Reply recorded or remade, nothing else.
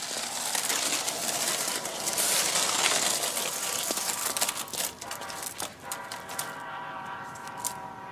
recorded